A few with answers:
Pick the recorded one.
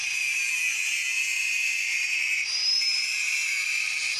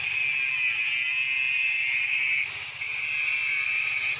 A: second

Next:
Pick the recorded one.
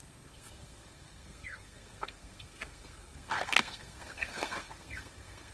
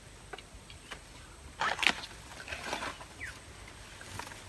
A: second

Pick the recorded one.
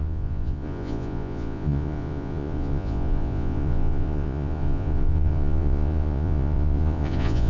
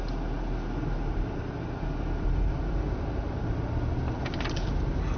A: second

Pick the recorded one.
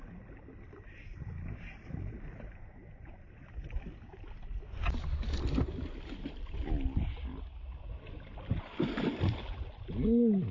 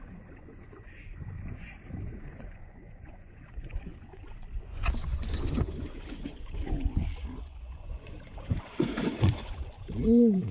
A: first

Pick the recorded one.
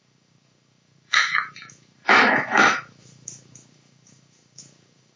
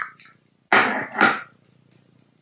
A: second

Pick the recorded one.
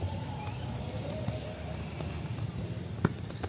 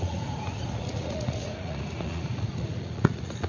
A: first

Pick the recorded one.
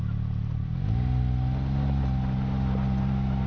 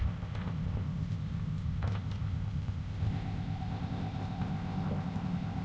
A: first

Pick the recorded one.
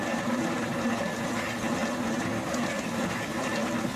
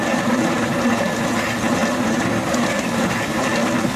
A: first